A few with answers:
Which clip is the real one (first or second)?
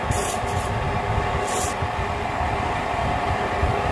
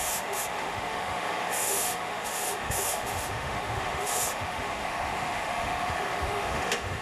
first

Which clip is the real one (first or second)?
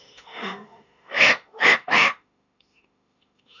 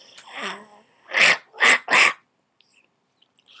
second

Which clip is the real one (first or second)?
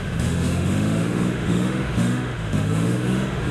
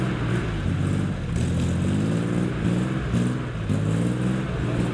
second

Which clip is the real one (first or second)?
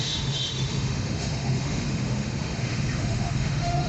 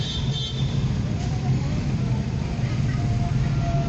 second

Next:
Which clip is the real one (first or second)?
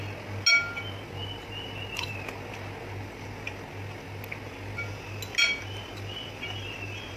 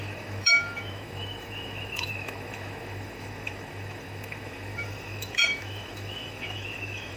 first